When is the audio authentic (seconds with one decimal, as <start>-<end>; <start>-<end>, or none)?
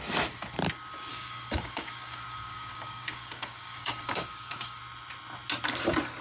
0.0-1.1; 4.8-6.2